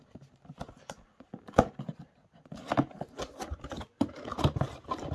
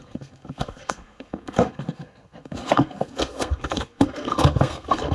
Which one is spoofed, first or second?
second